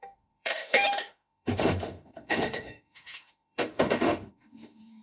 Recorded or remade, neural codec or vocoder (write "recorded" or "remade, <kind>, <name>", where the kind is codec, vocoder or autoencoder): remade, autoencoder, DAC-VAE